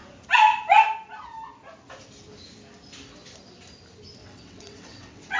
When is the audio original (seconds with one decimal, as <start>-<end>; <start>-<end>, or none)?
0.0-4.2